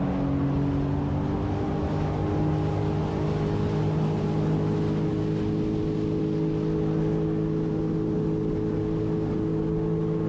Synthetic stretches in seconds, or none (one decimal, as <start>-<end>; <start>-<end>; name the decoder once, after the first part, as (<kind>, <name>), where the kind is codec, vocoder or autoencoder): none